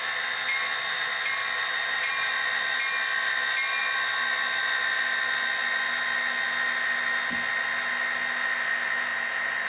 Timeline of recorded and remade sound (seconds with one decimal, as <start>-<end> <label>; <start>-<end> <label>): 0.0-1.7 recorded; 1.7-2.3 remade; 2.3-9.1 recorded; 9.1-9.7 remade